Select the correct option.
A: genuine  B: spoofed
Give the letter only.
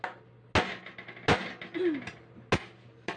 A